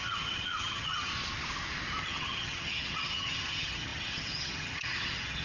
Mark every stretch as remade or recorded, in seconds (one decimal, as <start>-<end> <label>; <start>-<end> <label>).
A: 0.0-1.1 remade; 1.1-2.0 recorded; 2.0-5.4 remade